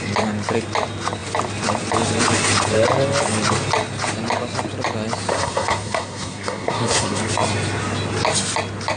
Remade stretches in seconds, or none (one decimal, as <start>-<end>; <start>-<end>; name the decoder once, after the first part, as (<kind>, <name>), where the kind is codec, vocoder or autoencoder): 5.3-7.2 (codec, SNAC)